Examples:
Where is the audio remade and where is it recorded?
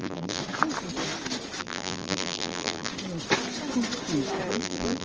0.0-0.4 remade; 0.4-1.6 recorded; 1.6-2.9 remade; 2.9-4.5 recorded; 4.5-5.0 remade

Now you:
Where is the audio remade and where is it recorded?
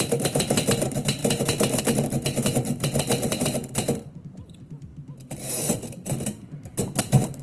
0.0-1.2 remade; 1.2-1.8 recorded; 1.8-4.9 remade; 4.9-7.0 recorded; 7.0-7.4 remade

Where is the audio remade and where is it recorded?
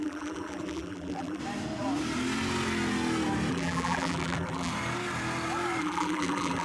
0.0-1.4 remade; 1.4-3.5 recorded; 3.5-4.7 remade; 4.7-5.8 recorded; 5.8-6.6 remade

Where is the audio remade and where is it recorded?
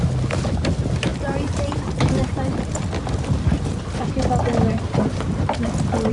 0.0-1.1 recorded; 1.1-1.8 remade; 1.8-6.1 recorded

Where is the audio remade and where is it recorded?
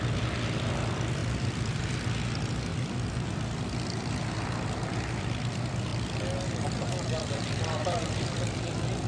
0.0-1.2 recorded; 1.2-1.8 remade; 1.8-2.7 recorded; 2.7-3.6 remade; 3.6-5.9 recorded; 5.9-9.1 remade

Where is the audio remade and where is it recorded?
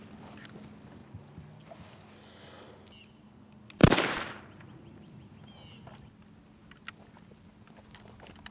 0.0-3.8 recorded; 3.8-4.4 remade; 4.4-8.5 recorded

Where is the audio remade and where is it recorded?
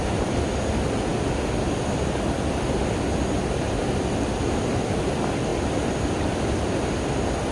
0.0-7.5 recorded